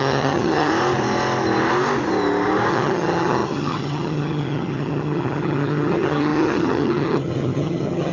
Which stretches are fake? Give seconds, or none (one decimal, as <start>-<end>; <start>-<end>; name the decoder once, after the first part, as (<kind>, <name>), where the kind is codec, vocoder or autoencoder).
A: 0.0-0.7 (vocoder, HiFi-GAN); 2.7-8.1

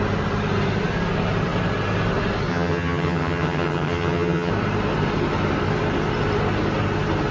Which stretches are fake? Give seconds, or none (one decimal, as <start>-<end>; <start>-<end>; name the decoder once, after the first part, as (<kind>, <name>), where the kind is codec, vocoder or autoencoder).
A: 2.5-4.5 (vocoder, HiFi-GAN)

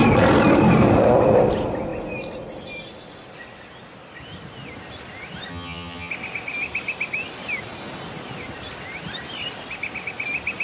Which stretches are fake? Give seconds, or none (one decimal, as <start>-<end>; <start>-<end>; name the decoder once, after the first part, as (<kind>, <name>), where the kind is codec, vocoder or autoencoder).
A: 5.5-6.1 (vocoder, HiFi-GAN)

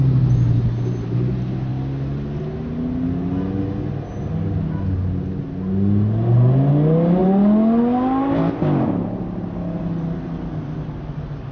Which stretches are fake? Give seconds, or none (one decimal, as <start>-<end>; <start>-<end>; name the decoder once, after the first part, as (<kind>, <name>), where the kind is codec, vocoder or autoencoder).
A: none

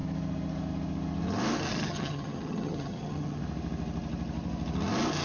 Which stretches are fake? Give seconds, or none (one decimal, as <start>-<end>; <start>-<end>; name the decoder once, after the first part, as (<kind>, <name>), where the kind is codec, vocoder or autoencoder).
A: 1.7-3.4 (vocoder, HiFi-GAN)

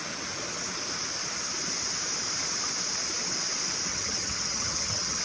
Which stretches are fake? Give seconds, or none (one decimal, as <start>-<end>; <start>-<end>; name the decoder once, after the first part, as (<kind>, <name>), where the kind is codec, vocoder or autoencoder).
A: 3.9-5.2 (vocoder, HiFi-GAN)

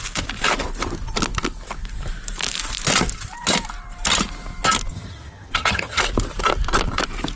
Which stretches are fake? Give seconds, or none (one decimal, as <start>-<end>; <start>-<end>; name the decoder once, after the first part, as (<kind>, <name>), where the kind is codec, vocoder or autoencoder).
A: 4.9-6.0 (vocoder, HiFi-GAN)